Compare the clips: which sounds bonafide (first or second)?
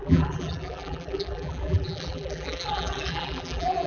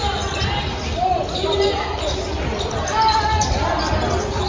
second